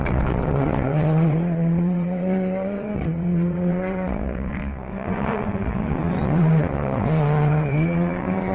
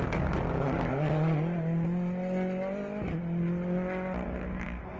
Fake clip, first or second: first